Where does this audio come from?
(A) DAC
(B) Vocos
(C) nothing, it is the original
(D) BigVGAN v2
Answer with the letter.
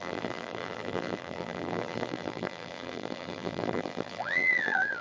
D